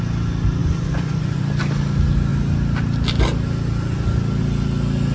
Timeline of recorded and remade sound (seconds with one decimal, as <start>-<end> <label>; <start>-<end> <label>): 0.0-0.6 recorded; 0.6-1.4 remade; 1.4-5.1 recorded

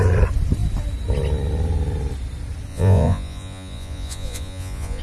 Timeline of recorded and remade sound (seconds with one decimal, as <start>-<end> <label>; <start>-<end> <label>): 0.0-2.7 recorded; 2.7-5.0 remade

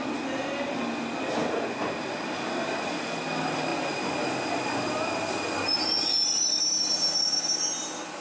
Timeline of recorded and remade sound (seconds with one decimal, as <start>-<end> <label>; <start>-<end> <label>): 0.0-8.2 recorded

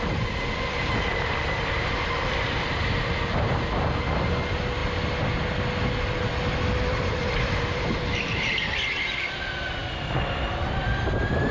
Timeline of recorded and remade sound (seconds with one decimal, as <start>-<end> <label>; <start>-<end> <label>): 0.0-11.5 recorded

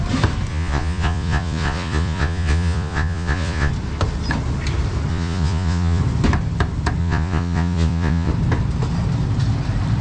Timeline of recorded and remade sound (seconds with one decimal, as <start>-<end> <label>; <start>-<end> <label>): 0.0-0.5 recorded; 0.5-3.7 remade; 3.7-5.1 recorded; 5.1-6.0 remade; 6.0-7.0 recorded; 7.0-8.3 remade; 8.3-10.0 recorded

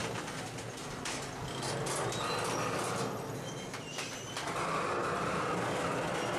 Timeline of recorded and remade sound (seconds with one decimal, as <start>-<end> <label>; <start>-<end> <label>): 0.0-6.4 recorded

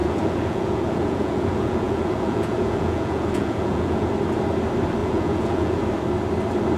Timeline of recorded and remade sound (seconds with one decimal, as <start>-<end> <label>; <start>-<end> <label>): 0.0-4.1 remade; 4.1-5.0 recorded; 5.0-5.8 remade; 5.8-6.8 recorded